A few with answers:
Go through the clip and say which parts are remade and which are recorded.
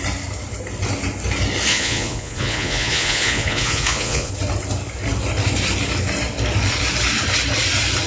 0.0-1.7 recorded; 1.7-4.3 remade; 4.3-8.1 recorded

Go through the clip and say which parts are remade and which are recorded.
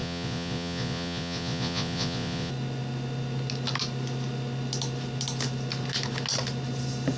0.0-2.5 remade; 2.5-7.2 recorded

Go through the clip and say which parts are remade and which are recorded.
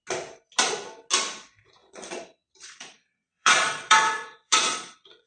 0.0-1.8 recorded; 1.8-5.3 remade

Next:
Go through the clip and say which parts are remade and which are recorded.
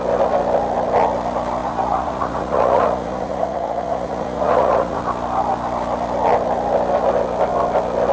0.0-1.6 recorded; 1.6-5.0 remade; 5.0-8.1 recorded